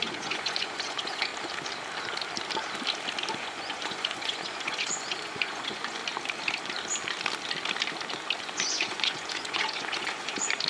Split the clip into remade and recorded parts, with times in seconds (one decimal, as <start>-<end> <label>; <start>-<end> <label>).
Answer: 0.0-1.3 remade; 1.3-3.3 recorded; 3.3-6.0 remade; 6.0-8.4 recorded; 8.4-10.7 remade